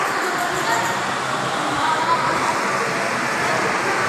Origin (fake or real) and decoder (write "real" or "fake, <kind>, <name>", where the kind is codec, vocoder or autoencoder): real